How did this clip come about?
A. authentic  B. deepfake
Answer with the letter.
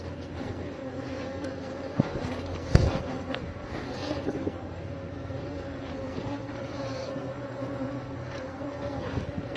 B